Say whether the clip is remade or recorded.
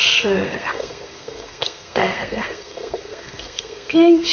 remade